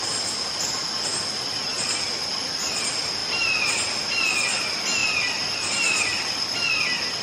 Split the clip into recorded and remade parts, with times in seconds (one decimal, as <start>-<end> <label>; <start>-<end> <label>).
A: 0.0-7.2 recorded